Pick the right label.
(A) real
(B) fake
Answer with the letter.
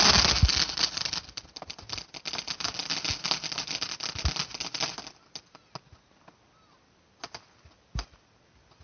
A